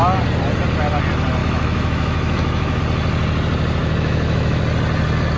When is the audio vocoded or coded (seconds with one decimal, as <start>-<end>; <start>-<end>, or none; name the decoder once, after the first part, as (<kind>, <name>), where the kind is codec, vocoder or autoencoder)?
1.4-2.8 (autoencoder, DAC-VAE); 3.8-4.6